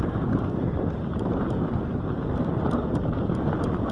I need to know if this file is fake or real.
fake